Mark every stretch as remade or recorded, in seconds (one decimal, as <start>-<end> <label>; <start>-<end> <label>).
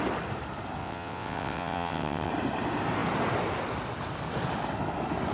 0.0-0.8 recorded; 0.8-2.3 remade; 2.3-5.3 recorded